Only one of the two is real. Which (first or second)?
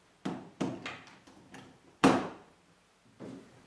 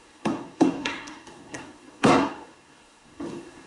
first